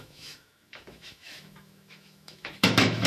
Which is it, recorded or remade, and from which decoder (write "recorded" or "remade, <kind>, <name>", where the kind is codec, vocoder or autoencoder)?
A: remade, autoencoder, DAC-VAE